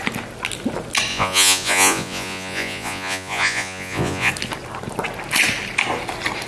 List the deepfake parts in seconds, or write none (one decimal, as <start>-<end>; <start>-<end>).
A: 1.1-4.3